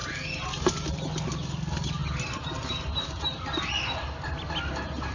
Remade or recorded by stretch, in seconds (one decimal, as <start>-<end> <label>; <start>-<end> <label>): 0.0-5.1 recorded